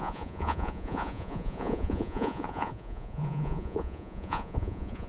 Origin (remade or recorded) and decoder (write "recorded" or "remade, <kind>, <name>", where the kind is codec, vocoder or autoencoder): remade, vocoder, Vocos